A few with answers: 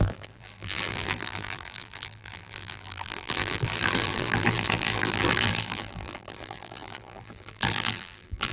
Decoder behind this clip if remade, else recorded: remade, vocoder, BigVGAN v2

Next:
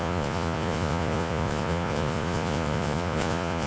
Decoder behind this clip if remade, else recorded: remade, vocoder, Vocos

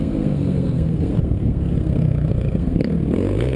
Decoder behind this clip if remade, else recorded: remade, codec, SNAC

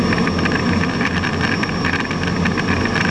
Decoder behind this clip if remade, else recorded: recorded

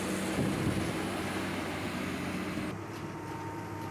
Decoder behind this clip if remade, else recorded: recorded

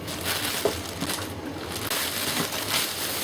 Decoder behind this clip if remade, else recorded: recorded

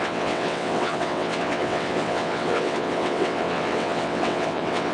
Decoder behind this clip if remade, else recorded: remade, vocoder, WaveNeXt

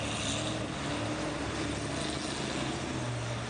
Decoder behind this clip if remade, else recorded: recorded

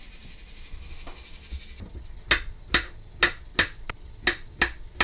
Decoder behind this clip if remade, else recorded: recorded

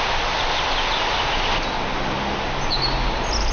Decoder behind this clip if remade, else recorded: recorded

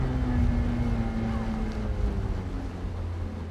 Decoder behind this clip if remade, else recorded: recorded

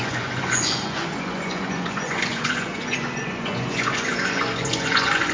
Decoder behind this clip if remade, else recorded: remade, vocoder, Vocos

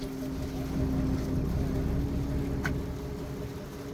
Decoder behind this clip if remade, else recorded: recorded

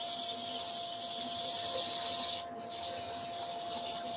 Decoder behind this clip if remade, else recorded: recorded